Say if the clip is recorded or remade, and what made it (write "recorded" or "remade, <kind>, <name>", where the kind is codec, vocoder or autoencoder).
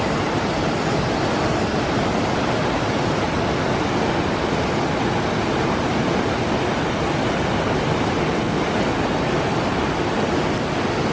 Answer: recorded